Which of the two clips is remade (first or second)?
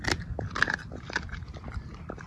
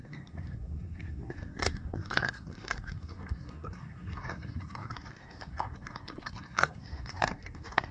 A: second